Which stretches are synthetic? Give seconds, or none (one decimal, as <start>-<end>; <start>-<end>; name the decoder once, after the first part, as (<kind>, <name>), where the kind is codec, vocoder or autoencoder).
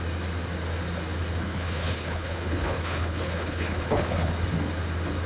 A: 1.4-4.3 (codec, HILCodec)